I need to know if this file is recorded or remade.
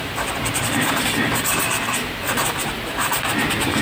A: recorded